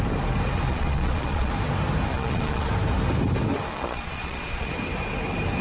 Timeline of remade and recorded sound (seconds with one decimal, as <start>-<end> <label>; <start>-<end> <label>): 0.0-0.7 recorded; 0.7-1.5 remade; 1.5-2.1 recorded; 2.1-2.7 remade; 2.7-3.7 recorded; 3.7-4.7 remade; 4.7-5.6 recorded